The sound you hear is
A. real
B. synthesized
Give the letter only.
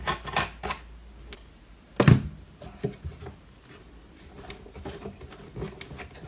A